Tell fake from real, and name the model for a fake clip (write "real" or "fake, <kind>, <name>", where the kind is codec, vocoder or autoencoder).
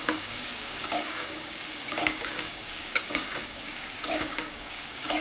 fake, codec, DAC